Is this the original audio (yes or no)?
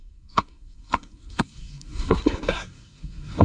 no